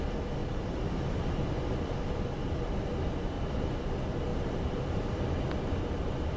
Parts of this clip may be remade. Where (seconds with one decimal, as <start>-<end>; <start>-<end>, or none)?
0.4-1.4; 4.3-5.2